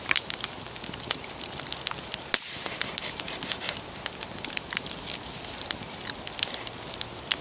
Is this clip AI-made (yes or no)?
no